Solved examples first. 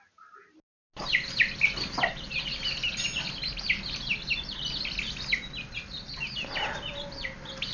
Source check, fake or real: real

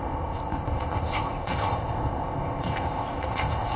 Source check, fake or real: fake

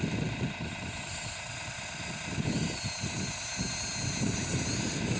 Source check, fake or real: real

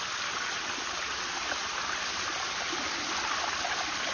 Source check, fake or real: real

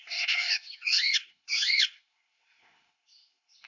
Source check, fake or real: fake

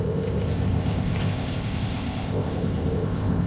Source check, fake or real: fake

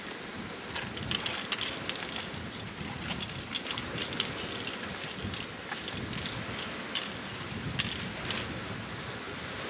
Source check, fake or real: real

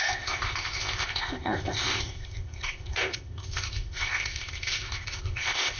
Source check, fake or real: fake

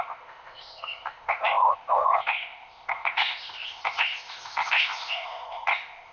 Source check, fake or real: fake